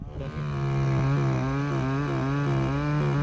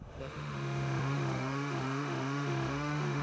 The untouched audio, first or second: first